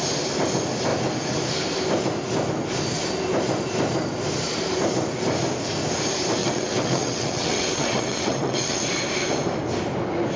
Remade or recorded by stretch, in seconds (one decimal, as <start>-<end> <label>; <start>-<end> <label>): 0.0-6.4 recorded; 6.4-8.8 remade; 8.8-10.4 recorded